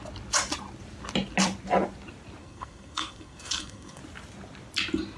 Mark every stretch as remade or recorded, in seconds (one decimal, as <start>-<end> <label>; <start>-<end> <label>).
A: 0.0-2.4 recorded; 2.4-4.0 remade; 4.0-5.2 recorded